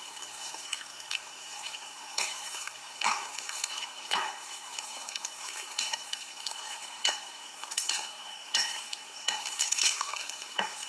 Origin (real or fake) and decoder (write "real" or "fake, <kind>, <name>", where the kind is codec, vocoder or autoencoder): fake, codec, SNAC